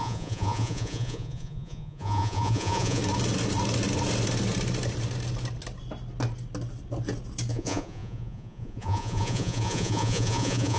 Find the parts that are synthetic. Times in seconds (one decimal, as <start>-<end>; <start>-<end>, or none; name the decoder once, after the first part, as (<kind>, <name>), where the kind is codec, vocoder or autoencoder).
0.0-3.0 (vocoder, Vocos); 7.5-10.8